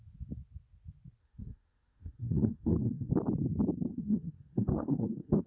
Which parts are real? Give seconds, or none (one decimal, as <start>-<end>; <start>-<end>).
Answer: 0.0-1.2; 3.1-3.9